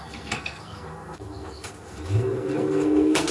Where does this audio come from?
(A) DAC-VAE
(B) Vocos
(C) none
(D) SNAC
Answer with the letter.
D